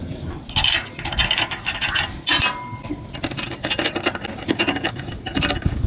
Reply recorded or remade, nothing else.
recorded